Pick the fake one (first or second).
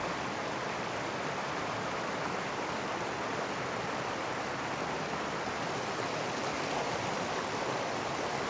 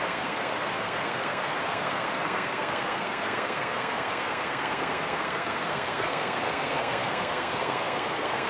second